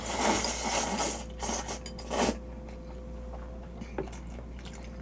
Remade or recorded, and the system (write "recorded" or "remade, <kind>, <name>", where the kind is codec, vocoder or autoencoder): recorded